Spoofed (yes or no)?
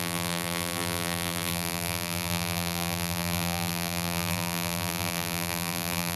yes